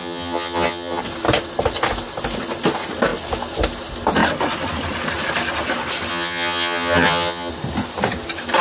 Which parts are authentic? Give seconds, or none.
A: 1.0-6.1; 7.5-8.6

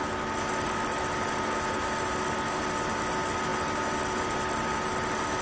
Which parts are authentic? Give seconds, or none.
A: 0.0-5.4

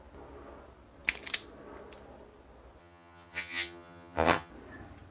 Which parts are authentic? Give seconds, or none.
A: 0.0-2.8; 4.5-5.1